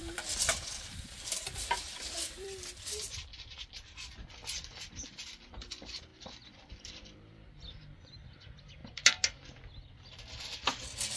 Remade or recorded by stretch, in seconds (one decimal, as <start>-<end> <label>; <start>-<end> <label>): 0.0-8.8 remade; 8.8-10.3 recorded; 10.3-11.2 remade